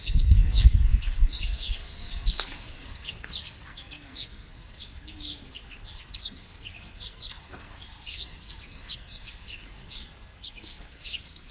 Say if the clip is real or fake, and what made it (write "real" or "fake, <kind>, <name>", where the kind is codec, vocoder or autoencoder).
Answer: fake, codec, SNAC